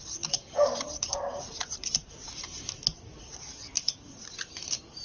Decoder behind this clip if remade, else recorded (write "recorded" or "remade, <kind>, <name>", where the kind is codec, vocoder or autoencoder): remade, vocoder, BigVGAN v2